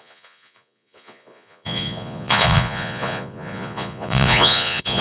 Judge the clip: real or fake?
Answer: fake